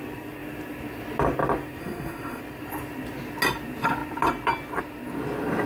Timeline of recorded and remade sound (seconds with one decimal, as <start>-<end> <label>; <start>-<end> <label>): 0.0-1.8 recorded; 1.8-2.4 remade; 2.4-5.7 recorded